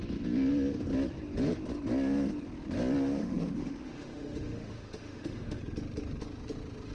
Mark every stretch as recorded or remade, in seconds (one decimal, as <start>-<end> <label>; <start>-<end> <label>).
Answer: 0.0-3.2 recorded; 3.2-5.6 remade; 5.6-6.9 recorded